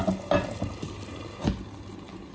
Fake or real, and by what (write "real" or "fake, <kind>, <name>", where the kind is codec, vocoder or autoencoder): real